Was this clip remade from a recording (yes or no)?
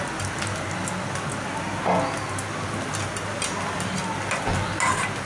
no